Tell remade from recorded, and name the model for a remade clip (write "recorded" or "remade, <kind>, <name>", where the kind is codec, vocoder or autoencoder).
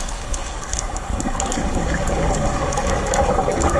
remade, codec, DAC